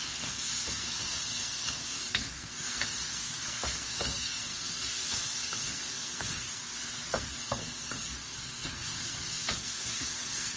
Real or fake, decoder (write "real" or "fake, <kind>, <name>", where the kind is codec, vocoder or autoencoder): fake, codec, SNAC